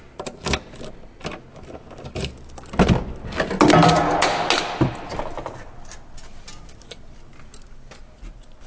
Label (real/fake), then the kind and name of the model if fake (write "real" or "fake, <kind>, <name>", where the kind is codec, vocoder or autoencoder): real